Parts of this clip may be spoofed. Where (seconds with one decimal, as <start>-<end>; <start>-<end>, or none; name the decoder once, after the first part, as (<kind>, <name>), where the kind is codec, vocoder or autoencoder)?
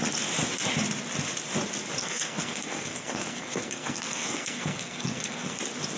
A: 2.0-5.6 (codec, SNAC)